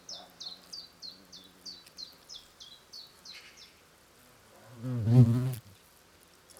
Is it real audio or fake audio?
real